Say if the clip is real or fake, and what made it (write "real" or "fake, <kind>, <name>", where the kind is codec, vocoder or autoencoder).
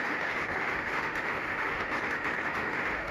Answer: fake, autoencoder, DAC-VAE